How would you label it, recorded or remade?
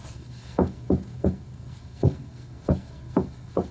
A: remade